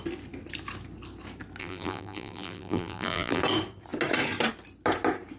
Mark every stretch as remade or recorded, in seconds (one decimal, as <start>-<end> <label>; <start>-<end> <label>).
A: 0.0-1.6 recorded; 1.6-3.4 remade; 3.4-5.4 recorded